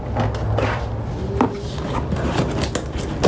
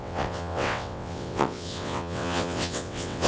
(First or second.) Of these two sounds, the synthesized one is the second